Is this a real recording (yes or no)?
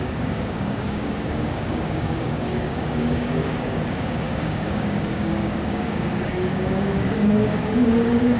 no